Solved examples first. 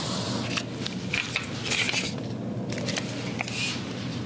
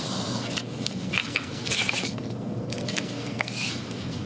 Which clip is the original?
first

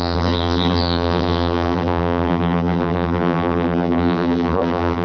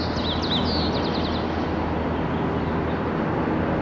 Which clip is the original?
second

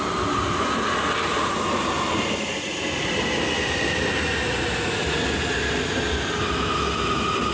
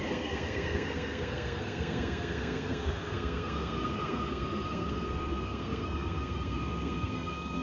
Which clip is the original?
first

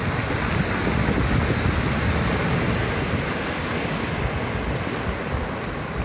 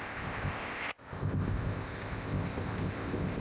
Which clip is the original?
first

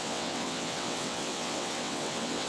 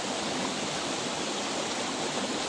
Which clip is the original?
second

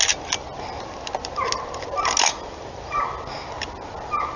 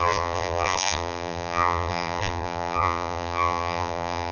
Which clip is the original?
first